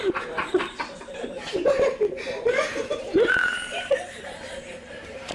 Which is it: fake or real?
fake